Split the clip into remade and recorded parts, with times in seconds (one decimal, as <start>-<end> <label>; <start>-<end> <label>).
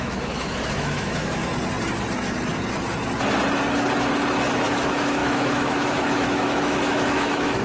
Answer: 0.0-1.5 remade; 1.5-4.5 recorded; 4.5-7.6 remade